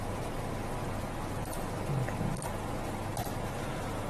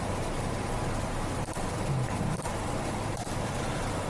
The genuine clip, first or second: first